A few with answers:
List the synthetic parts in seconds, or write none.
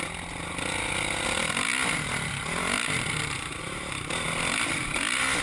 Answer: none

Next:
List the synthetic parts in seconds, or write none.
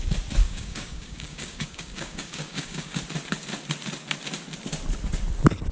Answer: 0.4-3.0 (codec, DAC)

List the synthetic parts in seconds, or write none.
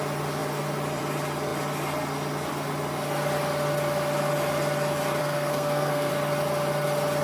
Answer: 5.2-6.1 (codec, SNAC)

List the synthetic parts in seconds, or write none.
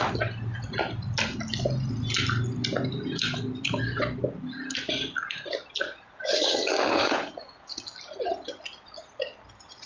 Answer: 6.9-7.8 (vocoder, Vocos)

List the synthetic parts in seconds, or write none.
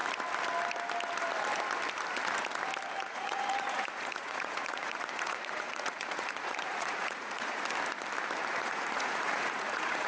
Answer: 3.0-7.6 (vocoder, Vocos); 8.5-10.1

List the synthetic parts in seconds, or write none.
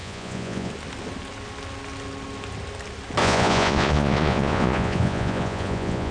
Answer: 0.0-0.7 (vocoder, Vocos); 3.2-6.1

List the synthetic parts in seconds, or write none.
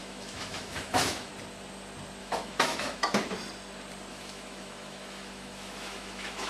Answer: 0.0-1.3 (autoencoder, DAC-VAE); 2.2-3.2; 4.1-6.5